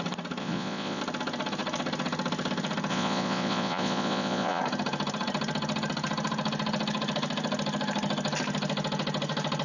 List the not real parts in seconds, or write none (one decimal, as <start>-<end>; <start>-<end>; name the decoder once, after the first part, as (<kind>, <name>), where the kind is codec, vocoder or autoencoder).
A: 0.4-1.0 (vocoder, Vocos); 2.9-4.6